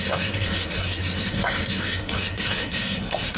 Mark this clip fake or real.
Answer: fake